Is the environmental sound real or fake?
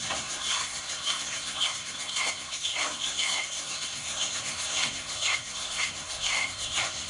fake